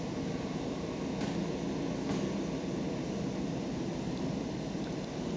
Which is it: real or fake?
real